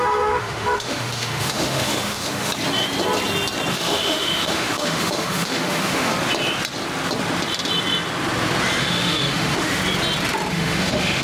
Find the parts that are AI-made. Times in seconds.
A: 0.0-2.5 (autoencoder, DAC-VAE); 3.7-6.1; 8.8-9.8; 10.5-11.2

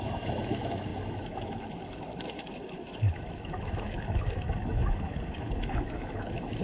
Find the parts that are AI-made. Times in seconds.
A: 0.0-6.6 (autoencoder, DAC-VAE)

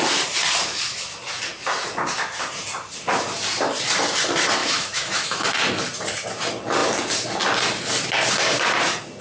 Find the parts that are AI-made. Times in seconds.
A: 4.6-5.4 (autoencoder, DAC-VAE)

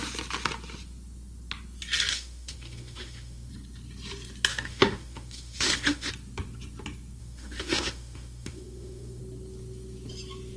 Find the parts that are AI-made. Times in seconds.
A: 2.1-3.5 (autoencoder, DAC-VAE); 4.5-6.1; 7.2-9.2

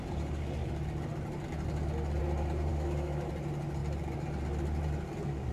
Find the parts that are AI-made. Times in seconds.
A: 2.7-3.3 (autoencoder, DAC-VAE)